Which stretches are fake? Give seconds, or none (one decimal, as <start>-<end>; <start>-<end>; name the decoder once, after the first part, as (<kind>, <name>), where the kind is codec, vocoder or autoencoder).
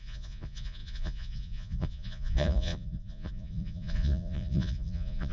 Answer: 0.0-5.3 (vocoder, Vocos)